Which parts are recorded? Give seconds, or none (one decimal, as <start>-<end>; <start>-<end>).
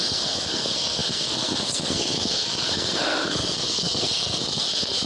none